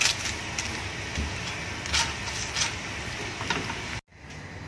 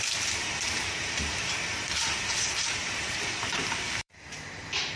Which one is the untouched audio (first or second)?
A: first